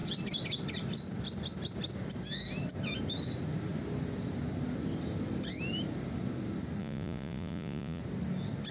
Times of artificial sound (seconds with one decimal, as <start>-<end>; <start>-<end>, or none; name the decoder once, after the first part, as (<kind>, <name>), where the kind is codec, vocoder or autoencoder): 6.8-8.0 (vocoder, Vocos)